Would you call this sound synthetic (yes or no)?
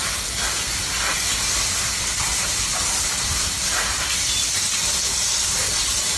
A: no